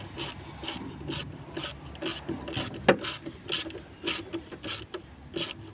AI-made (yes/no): no